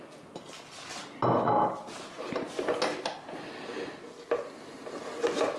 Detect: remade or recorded recorded